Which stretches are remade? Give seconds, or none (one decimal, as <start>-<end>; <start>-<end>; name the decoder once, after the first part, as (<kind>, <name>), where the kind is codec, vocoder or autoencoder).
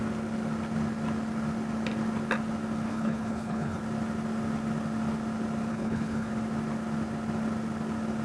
2.9-3.8 (codec, HILCodec); 5.7-6.3